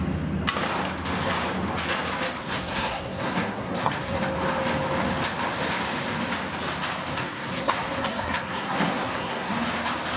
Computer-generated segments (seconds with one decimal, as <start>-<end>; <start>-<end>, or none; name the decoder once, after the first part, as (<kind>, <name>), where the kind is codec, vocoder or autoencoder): 2.4-4.2 (codec, SNAC); 7.1-9.5